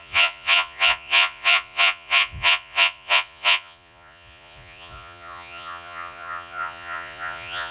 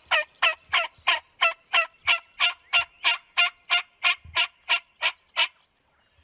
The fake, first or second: first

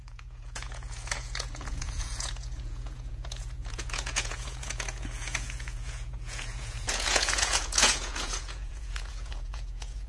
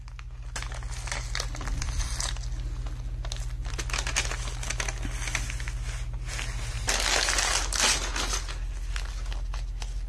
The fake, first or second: first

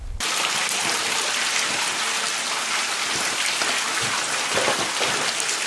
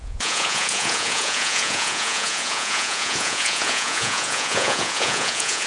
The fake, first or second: second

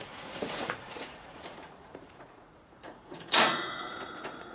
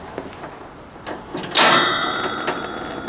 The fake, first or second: first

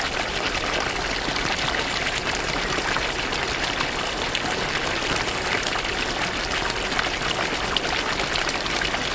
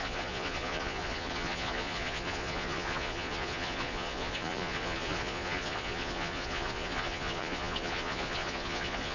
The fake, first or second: second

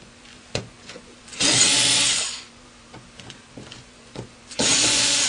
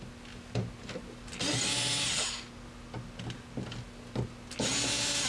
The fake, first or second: first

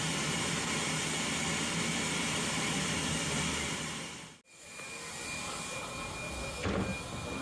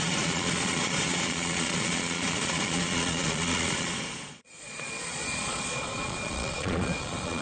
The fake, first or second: second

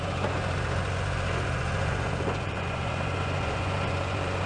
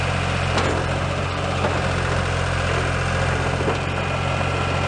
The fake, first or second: first